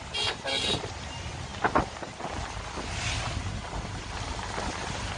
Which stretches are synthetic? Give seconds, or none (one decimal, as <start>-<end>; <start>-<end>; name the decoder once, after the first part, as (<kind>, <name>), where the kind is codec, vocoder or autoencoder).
none